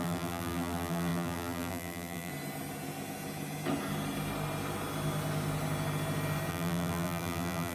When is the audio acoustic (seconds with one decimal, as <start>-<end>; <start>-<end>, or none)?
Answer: 2.3-6.5